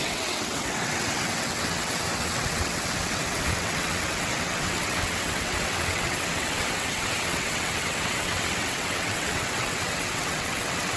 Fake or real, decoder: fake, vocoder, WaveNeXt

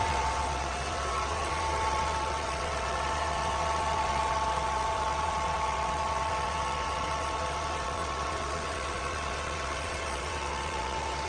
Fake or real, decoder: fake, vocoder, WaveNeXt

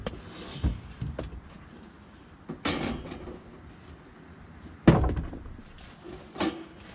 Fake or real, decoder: real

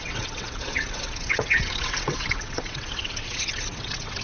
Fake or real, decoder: fake, vocoder, WaveNeXt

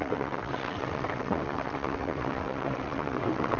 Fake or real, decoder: fake, vocoder, WaveNeXt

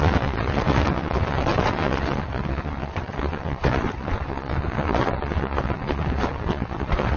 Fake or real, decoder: fake, vocoder, WaveNeXt